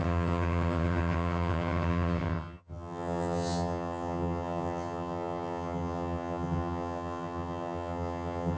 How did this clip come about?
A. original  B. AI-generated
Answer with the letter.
B